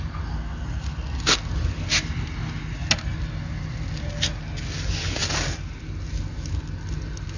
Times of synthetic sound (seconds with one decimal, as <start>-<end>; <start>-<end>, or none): none